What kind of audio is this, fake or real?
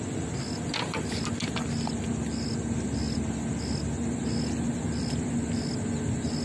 real